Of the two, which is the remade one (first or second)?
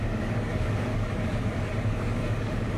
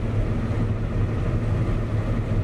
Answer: first